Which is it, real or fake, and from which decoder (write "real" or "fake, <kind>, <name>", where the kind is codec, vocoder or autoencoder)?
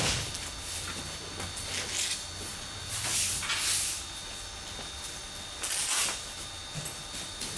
real